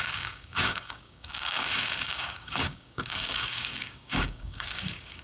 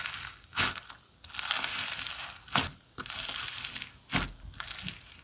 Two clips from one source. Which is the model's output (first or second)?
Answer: first